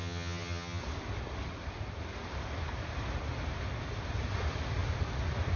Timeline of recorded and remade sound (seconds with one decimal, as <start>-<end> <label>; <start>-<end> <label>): 0.0-0.8 remade; 0.8-5.6 recorded